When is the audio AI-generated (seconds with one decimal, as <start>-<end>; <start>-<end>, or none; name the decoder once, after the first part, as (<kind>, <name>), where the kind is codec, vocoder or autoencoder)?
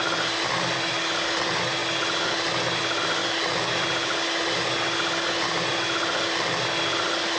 none